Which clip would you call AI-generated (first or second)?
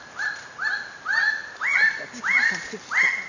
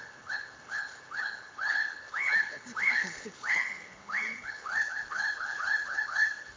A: second